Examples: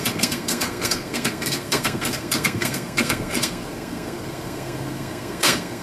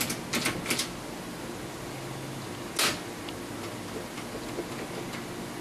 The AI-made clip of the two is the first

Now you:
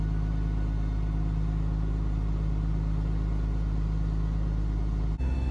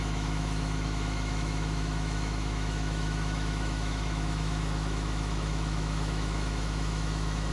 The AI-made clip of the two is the second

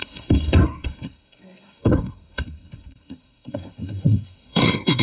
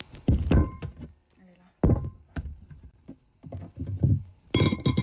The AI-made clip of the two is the first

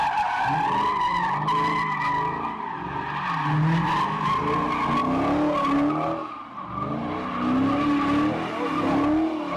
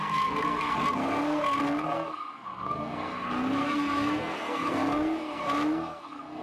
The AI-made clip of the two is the second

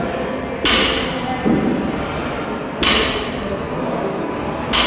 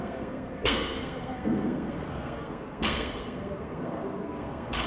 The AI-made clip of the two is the second